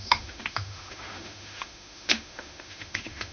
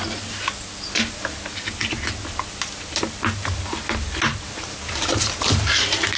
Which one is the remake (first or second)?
first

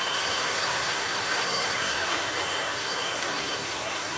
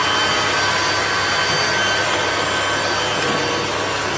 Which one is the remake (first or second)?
first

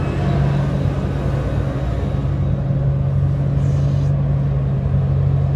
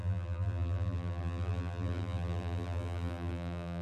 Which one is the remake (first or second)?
second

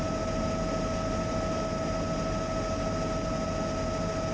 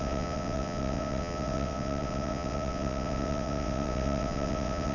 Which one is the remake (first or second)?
second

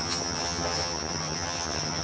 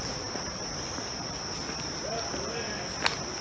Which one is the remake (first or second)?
first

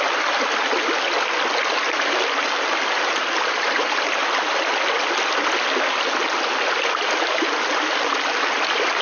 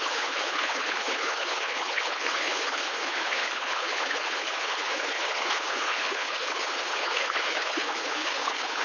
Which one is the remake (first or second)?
second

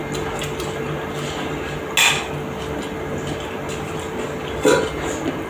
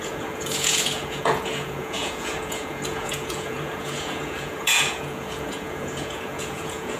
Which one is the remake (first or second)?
second